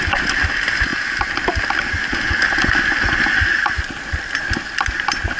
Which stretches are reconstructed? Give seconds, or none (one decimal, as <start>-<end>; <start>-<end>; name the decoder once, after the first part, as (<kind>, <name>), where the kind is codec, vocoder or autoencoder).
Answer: none